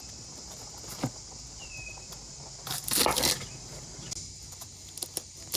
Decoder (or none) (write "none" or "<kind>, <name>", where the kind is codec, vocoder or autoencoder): none